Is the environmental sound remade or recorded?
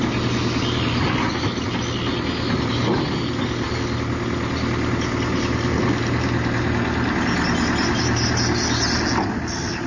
recorded